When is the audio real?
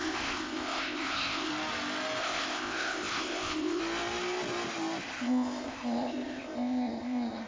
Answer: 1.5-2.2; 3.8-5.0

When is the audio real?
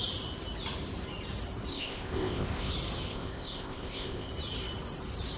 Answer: 0.0-1.7; 2.7-3.1; 4.3-5.4